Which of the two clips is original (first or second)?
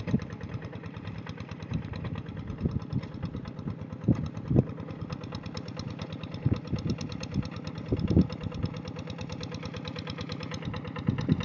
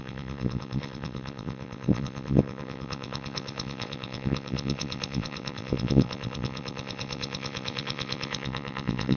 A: first